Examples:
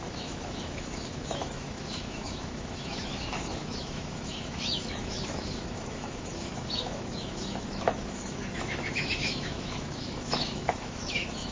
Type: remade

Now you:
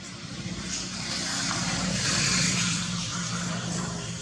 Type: remade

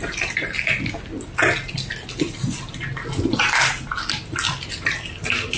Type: recorded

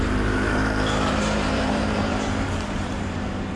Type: remade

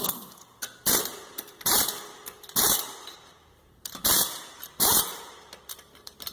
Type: remade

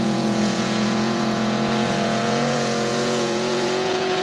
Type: remade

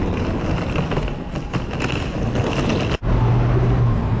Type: recorded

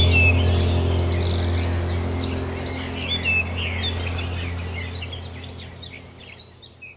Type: recorded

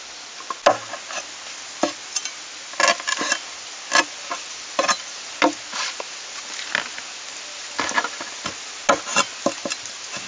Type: recorded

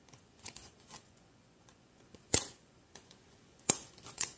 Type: remade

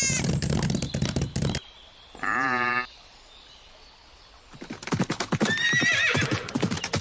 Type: recorded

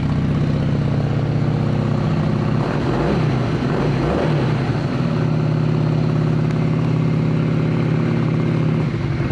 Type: recorded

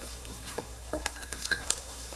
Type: remade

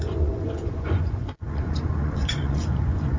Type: remade